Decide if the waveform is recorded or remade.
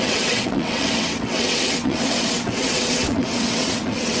remade